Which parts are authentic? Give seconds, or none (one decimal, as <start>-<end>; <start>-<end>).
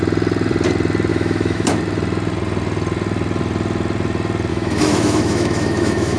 0.0-1.1; 1.7-4.5